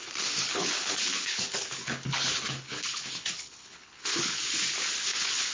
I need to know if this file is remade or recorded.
remade